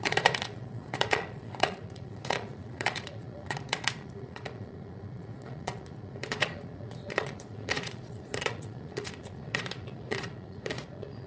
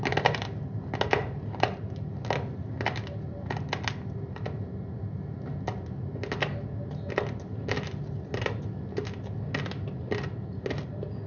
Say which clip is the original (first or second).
second